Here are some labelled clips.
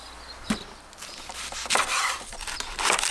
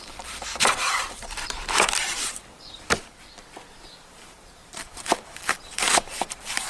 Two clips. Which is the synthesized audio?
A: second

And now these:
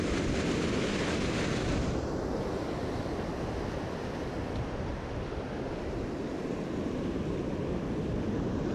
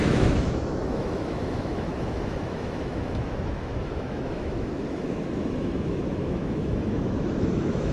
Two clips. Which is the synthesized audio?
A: second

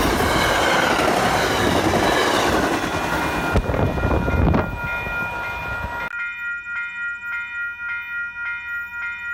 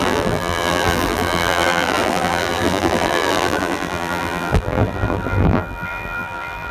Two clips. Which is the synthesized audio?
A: second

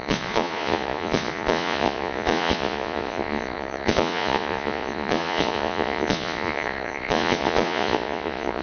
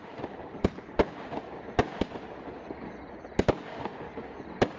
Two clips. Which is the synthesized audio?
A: first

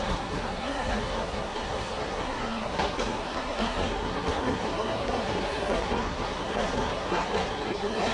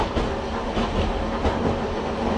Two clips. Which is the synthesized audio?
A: first